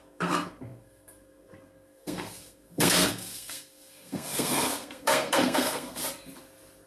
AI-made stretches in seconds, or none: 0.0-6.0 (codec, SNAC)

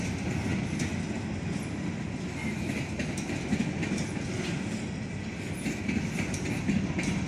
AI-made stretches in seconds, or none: none

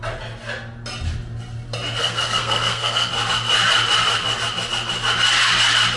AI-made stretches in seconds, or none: 2.0-3.1 (codec, SNAC)

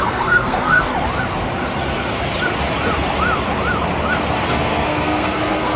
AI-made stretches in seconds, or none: 0.0-0.9 (codec, SNAC); 4.4-5.8

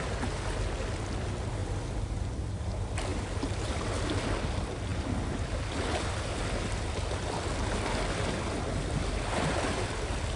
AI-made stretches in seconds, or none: none